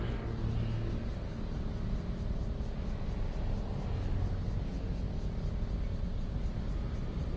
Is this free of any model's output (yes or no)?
yes